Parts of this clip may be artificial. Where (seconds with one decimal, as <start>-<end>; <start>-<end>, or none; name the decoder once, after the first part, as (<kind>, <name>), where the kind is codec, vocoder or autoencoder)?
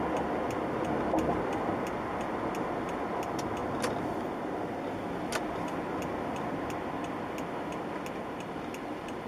none